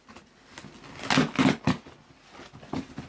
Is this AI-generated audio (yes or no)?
no